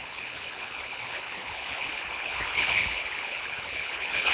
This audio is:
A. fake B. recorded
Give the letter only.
A